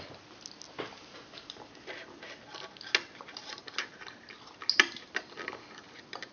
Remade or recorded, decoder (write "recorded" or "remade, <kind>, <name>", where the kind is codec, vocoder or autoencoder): recorded